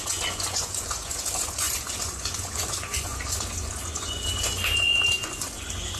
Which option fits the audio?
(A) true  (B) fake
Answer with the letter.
B